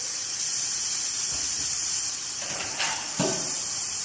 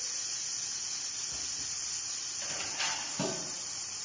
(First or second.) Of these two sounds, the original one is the second